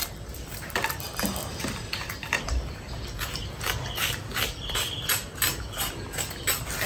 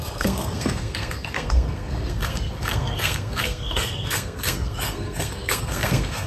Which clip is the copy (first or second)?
second